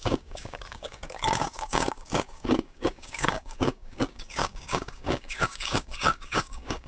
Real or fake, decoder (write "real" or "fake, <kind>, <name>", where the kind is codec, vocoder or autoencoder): fake, codec, DAC